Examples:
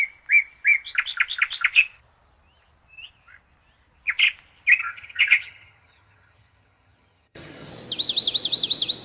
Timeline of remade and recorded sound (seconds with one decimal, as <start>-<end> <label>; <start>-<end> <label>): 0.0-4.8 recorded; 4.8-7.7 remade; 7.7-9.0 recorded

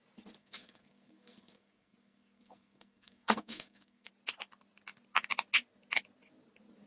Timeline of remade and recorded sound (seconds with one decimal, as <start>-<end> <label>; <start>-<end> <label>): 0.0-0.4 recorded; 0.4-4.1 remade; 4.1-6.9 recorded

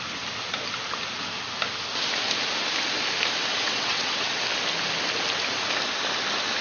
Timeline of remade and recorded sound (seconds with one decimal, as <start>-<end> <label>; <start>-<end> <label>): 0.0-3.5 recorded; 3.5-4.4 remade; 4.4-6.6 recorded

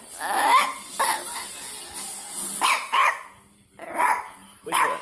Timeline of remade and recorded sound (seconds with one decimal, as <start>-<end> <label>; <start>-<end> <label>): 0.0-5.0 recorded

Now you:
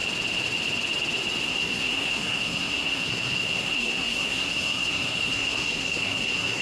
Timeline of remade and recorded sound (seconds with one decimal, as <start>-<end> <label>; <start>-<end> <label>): 0.0-1.4 recorded; 1.4-6.6 remade

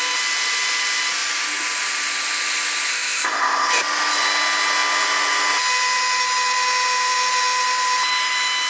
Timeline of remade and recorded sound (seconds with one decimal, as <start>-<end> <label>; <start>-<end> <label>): 0.0-2.9 recorded; 2.9-3.7 remade; 3.7-8.7 recorded

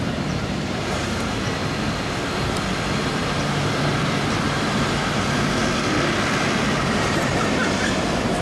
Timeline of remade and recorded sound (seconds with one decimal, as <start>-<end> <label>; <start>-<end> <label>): 0.0-1.6 remade; 1.6-3.0 recorded; 3.0-5.6 remade; 5.6-6.8 recorded; 6.8-8.4 remade

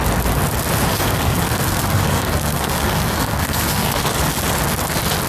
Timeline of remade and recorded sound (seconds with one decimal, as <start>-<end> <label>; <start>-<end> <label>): 0.0-0.9 recorded; 0.9-4.1 remade; 4.1-5.3 recorded